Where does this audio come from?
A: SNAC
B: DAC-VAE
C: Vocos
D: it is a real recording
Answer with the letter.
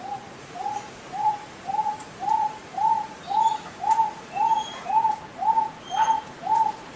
C